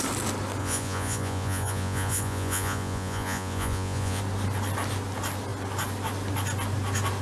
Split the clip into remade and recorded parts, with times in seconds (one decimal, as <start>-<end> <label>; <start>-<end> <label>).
0.0-0.6 recorded; 0.6-4.2 remade; 4.2-7.2 recorded